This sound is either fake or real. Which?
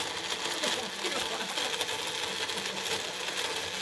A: real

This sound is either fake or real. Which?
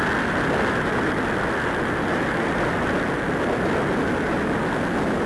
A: real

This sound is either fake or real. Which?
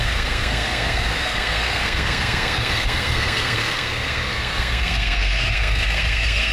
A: fake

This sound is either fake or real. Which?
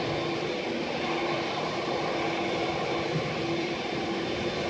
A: real